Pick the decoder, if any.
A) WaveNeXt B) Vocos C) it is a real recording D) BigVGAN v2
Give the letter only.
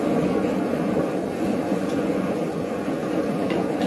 B